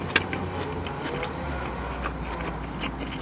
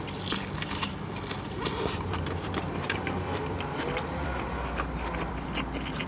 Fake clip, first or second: second